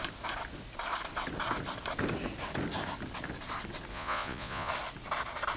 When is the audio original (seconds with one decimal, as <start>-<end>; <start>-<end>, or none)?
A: 0.0-3.9; 4.7-5.6